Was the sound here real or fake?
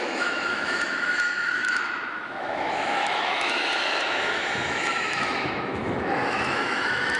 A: fake